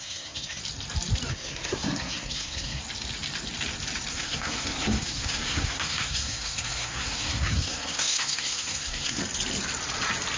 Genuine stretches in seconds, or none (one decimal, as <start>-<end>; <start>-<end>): 0.6-1.3; 2.8-4.1; 9.2-10.4